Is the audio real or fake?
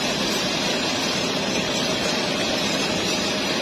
fake